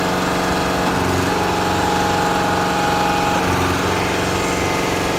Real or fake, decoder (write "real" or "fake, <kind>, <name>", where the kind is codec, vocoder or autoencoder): real